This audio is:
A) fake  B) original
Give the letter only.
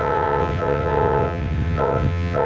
A